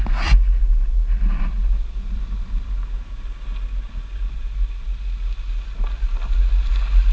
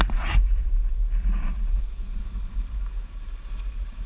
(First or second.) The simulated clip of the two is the second